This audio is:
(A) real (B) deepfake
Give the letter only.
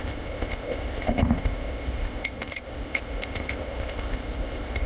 B